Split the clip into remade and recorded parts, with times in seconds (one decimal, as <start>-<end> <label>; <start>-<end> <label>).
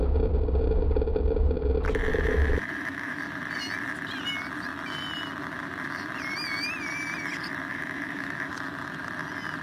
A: 0.0-2.1 recorded; 2.1-3.2 remade; 3.2-7.7 recorded; 7.7-8.5 remade; 8.5-9.6 recorded